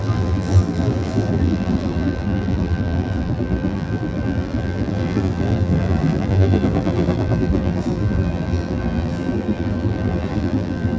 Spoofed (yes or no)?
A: yes